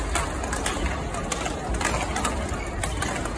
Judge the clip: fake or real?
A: real